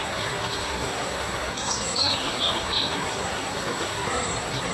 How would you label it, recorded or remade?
remade